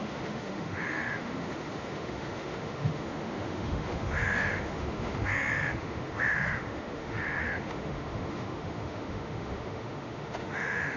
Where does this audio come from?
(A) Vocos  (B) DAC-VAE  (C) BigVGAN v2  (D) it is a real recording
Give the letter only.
B